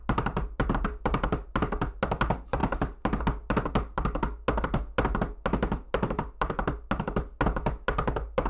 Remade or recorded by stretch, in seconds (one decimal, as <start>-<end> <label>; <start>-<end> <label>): 0.0-8.5 recorded